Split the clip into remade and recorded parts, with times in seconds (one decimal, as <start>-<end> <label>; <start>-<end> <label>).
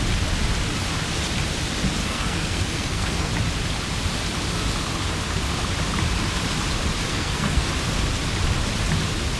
0.0-2.0 recorded; 2.0-3.3 remade; 3.3-7.1 recorded; 7.1-7.7 remade; 7.7-9.4 recorded